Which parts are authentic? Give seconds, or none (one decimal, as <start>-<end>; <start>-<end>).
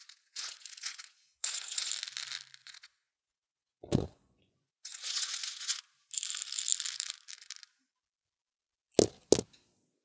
1.9-2.6; 5.8-10.0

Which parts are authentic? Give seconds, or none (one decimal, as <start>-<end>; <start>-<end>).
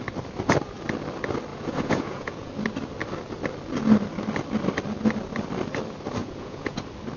0.0-1.5; 2.5-6.2; 6.8-7.2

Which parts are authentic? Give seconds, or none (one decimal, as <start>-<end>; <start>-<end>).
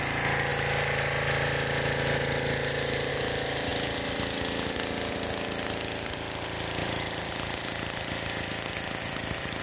0.0-3.7; 4.7-6.8; 8.5-9.6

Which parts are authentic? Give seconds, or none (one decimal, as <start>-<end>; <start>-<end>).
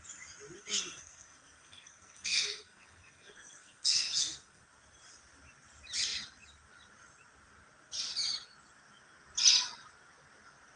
0.0-0.6; 4.6-10.8